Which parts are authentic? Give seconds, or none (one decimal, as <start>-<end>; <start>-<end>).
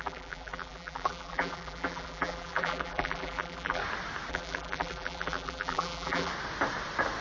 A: 3.8-4.3; 6.3-7.2